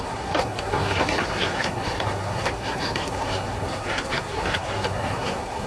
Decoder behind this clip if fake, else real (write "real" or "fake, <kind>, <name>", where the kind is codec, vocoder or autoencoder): fake, codec, SNAC